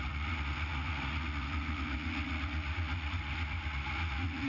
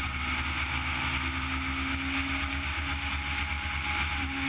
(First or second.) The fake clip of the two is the first